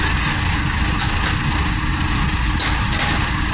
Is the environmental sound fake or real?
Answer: real